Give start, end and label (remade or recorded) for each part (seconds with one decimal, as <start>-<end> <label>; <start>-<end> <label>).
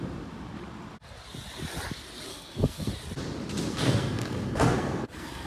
0.0-2.3 recorded; 2.3-2.9 remade; 2.9-3.7 recorded; 3.7-5.5 remade